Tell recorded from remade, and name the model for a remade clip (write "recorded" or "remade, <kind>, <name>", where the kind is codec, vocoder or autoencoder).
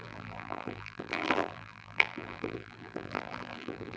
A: remade, vocoder, BigVGAN v2